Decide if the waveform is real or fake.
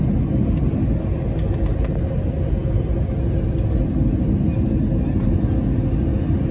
real